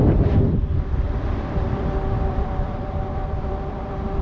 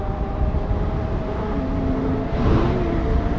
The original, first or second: second